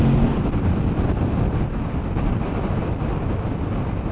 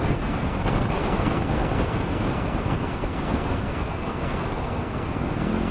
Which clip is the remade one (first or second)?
second